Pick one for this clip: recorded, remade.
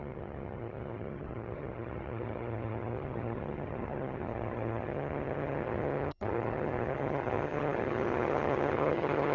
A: remade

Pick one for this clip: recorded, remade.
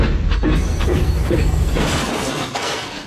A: remade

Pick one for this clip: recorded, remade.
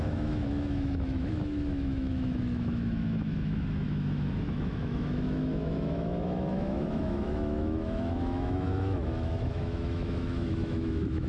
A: remade